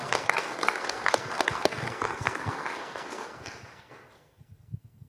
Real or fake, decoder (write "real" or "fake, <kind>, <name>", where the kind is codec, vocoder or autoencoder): fake, codec, SNAC